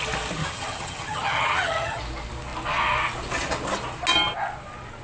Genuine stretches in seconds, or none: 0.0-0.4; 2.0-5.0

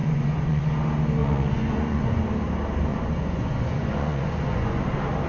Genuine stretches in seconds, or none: 0.6-1.2; 2.2-2.9; 4.8-5.3

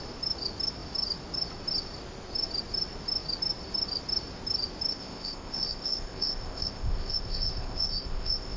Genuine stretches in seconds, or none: 0.0-4.9

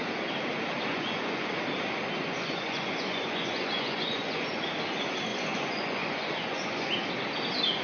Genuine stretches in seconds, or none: 0.0-0.9; 1.5-2.2; 4.6-5.3; 6.9-7.8

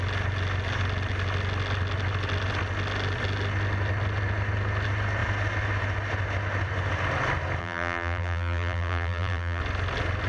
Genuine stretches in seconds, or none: 0.0-7.6; 9.6-10.3